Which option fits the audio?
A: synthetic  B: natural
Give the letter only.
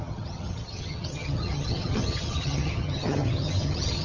A